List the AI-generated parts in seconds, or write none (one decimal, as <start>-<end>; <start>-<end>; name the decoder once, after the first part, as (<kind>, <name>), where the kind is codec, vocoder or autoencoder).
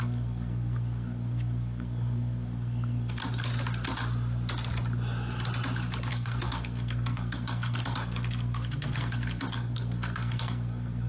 0.0-3.2 (codec, SNAC); 6.1-11.1